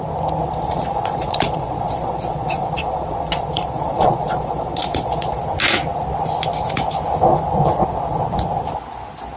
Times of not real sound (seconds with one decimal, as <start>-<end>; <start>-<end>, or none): 0.4-5.4